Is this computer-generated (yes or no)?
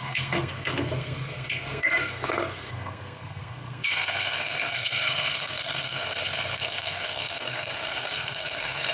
yes